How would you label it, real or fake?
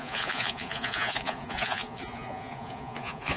fake